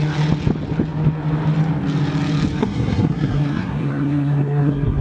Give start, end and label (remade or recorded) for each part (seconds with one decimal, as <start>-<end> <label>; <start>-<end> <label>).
0.0-2.6 recorded; 2.6-5.0 remade